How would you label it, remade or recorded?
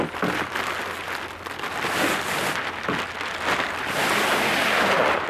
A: recorded